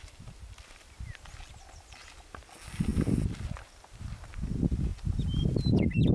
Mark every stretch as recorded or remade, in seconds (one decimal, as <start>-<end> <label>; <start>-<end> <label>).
0.0-6.1 recorded